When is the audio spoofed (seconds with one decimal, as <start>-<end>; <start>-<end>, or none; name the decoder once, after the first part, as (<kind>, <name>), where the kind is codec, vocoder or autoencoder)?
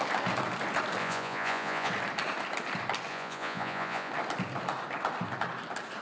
1.0-1.9 (vocoder, Vocos); 3.1-4.1